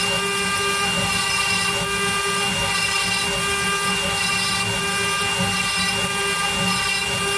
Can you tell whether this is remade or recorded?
recorded